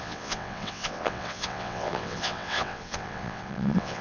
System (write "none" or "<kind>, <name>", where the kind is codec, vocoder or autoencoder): vocoder, WaveNeXt